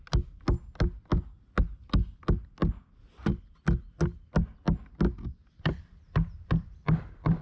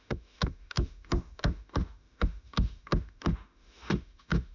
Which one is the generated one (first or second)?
second